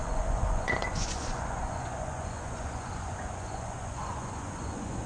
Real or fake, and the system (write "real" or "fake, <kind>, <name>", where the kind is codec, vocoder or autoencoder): fake, vocoder, Vocos